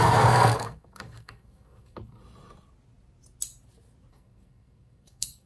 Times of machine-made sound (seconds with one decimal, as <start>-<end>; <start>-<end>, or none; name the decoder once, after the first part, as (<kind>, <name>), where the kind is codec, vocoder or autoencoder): 0.0-2.2 (codec, SNAC); 4.1-5.5

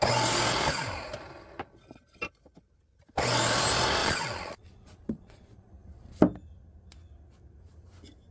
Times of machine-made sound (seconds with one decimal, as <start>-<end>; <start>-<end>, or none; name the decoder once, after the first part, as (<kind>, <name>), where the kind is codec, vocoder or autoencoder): 4.0-5.7 (vocoder, Vocos)